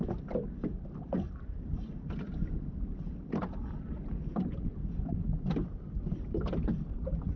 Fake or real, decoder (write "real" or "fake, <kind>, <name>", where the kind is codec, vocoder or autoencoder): real